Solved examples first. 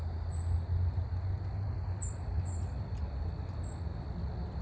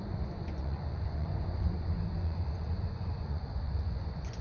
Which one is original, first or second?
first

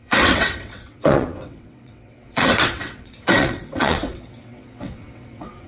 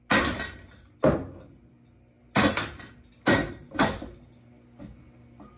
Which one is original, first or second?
second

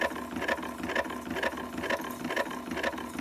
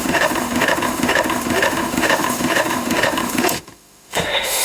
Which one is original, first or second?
first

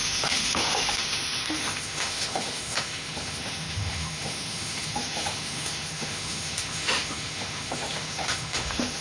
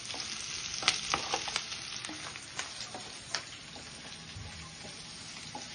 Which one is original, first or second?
second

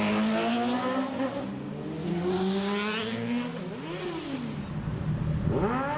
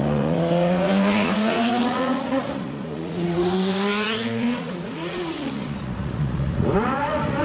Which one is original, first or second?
first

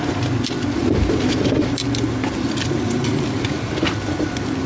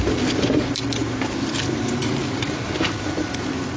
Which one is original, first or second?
second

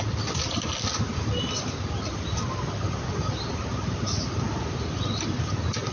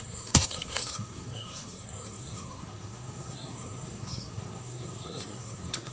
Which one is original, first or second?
first